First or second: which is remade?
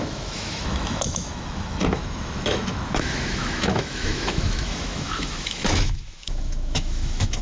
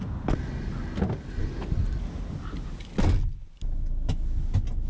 first